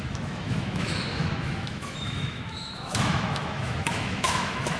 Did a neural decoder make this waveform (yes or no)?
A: yes